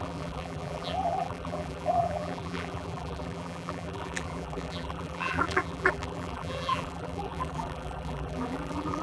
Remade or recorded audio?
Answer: remade